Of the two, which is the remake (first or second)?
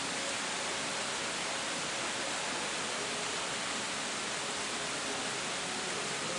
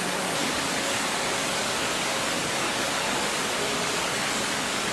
second